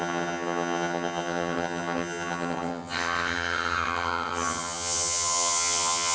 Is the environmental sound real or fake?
fake